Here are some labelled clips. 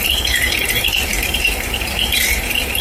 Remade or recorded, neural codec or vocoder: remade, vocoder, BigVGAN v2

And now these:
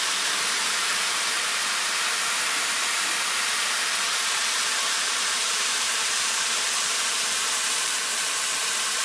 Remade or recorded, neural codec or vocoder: remade, vocoder, BigVGAN v2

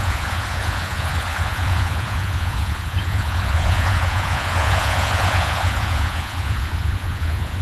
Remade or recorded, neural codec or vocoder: remade, vocoder, Vocos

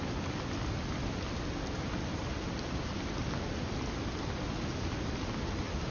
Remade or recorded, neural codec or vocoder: recorded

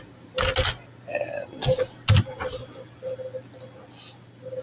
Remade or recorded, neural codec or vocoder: recorded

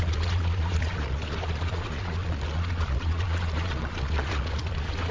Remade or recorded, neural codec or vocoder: remade, vocoder, Vocos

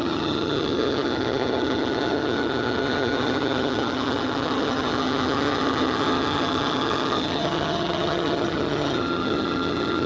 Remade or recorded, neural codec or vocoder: remade, vocoder, HiFi-GAN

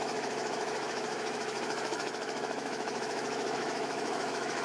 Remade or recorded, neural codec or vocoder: remade, autoencoder, DAC-VAE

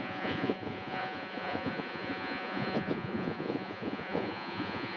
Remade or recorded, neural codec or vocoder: remade, vocoder, Vocos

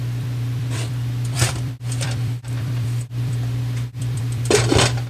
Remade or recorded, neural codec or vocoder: remade, vocoder, BigVGAN v2